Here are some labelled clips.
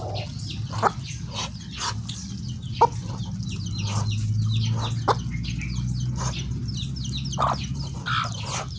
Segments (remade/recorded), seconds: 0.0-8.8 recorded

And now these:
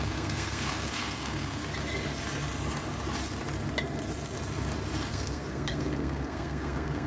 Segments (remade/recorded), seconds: 0.0-1.6 remade; 1.6-5.1 recorded; 5.1-7.1 remade

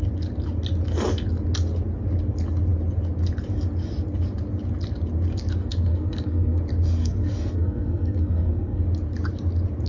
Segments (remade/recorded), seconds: 0.0-5.6 recorded; 5.6-6.6 remade; 6.6-7.0 recorded; 7.0-8.8 remade; 8.8-9.9 recorded

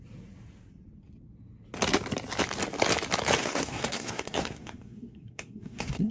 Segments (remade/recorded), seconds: 0.0-3.4 recorded; 3.4-6.1 remade

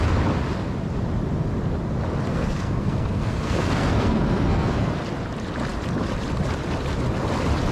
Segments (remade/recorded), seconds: 0.0-2.3 recorded; 2.3-4.9 remade; 4.9-7.7 recorded